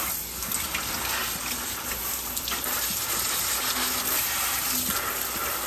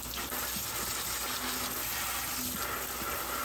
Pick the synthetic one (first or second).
first